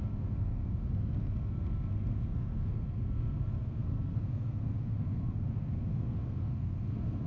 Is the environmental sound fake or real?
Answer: fake